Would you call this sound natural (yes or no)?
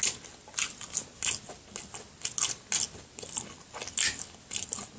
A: yes